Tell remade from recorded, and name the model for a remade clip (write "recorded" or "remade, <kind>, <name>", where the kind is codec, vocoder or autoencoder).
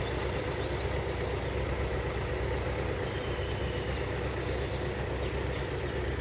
recorded